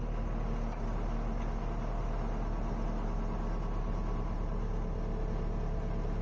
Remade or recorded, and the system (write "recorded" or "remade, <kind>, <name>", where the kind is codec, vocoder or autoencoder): recorded